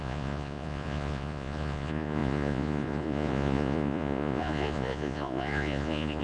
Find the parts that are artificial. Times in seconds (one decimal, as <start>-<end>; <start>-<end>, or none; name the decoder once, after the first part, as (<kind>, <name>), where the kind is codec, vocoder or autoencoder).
0.0-6.2 (vocoder, Vocos)